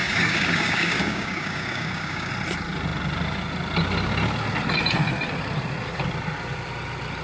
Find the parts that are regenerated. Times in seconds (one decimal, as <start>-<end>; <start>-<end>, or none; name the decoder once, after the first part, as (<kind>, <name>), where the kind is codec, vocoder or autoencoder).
0.0-2.3 (codec, DAC)